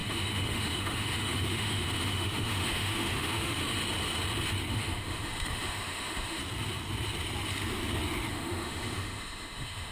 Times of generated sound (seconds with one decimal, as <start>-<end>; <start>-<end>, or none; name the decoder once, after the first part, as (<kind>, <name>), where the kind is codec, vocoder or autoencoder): 0.0-3.6 (autoencoder, DAC-VAE); 4.7-6.4; 8.3-9.9